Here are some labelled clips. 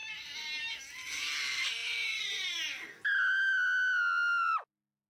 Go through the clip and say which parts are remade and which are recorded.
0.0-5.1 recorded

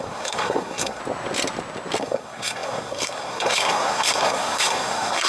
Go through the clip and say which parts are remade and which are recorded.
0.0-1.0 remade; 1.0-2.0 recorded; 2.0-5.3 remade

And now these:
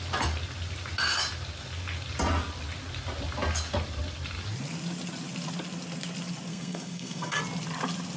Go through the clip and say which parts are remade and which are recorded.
0.0-6.5 recorded; 6.5-7.4 remade; 7.4-8.2 recorded

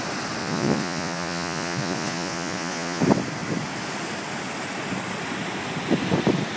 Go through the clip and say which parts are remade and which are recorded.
0.0-0.4 recorded; 0.4-3.0 remade; 3.0-6.6 recorded

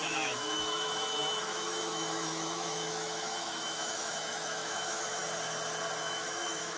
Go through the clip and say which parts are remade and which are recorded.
0.0-5.2 remade; 5.2-6.0 recorded; 6.0-6.8 remade